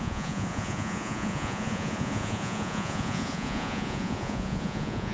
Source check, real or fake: fake